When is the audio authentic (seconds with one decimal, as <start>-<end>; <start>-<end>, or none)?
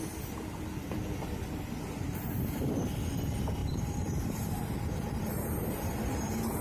0.0-3.6